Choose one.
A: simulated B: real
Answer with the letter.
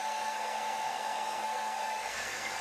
A